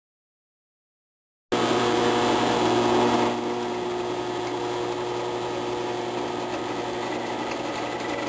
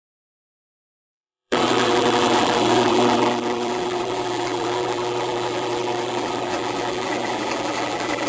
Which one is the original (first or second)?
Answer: first